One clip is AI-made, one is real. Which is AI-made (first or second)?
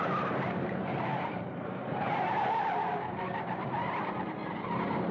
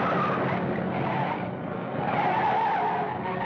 first